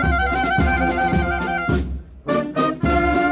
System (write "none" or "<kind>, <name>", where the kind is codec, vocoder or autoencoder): none